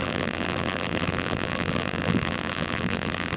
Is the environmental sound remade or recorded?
remade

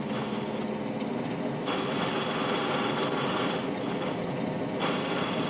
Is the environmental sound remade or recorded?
recorded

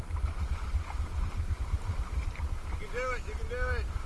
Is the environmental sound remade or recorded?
recorded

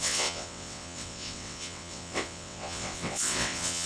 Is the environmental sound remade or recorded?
remade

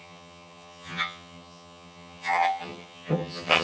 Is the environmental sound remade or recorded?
remade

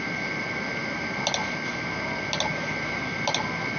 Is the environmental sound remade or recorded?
recorded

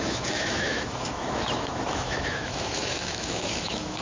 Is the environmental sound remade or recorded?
remade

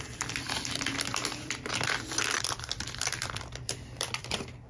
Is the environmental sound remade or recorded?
remade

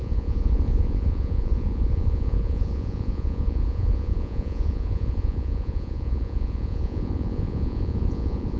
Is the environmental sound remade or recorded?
remade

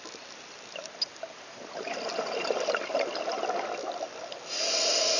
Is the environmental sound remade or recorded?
recorded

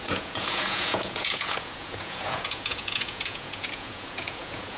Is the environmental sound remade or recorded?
remade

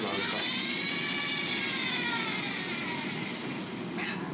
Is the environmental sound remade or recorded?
recorded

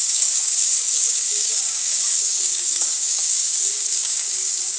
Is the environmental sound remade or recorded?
remade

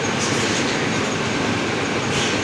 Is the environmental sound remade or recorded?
recorded